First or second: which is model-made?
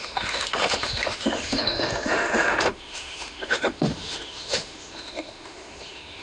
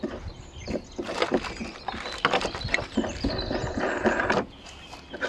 first